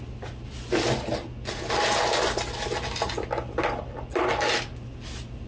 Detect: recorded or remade recorded